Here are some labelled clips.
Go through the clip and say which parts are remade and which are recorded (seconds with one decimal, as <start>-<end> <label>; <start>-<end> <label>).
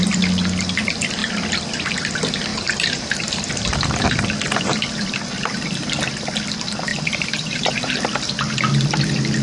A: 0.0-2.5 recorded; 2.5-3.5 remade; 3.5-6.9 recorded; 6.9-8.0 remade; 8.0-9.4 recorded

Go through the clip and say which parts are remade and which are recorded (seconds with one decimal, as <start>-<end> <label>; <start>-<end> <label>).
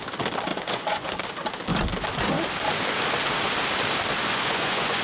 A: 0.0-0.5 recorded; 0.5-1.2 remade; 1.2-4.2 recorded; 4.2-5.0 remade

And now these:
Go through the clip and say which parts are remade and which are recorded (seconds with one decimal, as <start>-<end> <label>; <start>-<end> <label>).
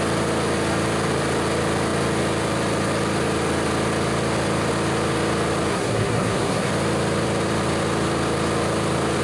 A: 0.0-5.7 recorded; 5.7-6.7 remade; 6.7-9.2 recorded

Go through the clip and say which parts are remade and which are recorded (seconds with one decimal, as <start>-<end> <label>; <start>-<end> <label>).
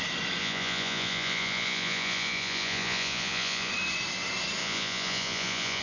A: 0.0-0.4 recorded; 0.4-3.7 remade; 3.7-4.6 recorded; 4.6-5.8 remade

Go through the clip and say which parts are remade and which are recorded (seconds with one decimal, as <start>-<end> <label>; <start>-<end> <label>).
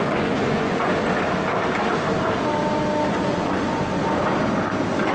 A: 0.0-0.9 remade; 0.9-3.1 recorded; 3.1-3.9 remade; 3.9-5.1 recorded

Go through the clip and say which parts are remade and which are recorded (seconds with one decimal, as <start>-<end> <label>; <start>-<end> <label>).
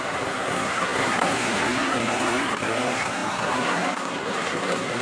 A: 0.0-5.0 remade